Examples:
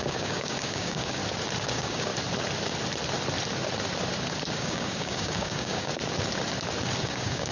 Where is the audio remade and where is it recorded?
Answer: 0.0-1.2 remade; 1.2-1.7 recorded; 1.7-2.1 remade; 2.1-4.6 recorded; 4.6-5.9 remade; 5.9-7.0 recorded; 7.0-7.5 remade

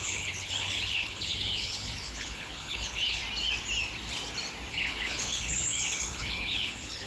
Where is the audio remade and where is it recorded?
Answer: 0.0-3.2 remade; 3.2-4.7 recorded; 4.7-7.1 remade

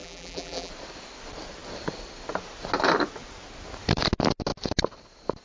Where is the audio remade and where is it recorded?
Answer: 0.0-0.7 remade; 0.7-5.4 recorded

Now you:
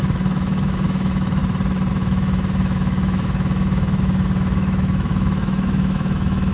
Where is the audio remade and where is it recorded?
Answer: 0.0-1.4 remade; 1.4-1.9 recorded; 1.9-6.5 remade